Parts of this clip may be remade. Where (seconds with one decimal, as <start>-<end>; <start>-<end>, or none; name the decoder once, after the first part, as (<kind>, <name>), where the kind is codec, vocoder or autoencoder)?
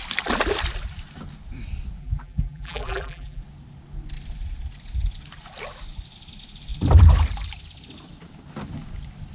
2.0-3.4 (vocoder, BigVGAN v2)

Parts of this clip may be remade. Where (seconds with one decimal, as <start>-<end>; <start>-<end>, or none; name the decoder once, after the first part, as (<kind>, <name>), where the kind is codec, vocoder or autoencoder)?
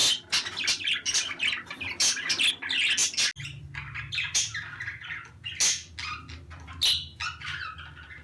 none